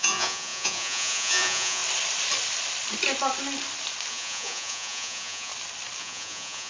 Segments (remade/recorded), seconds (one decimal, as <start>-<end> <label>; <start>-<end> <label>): 0.0-1.8 remade; 1.8-4.1 recorded; 4.1-5.5 remade; 5.5-6.0 recorded; 6.0-6.7 remade